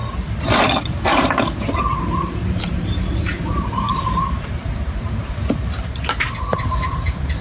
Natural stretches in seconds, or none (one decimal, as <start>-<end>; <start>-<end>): 0.0-0.9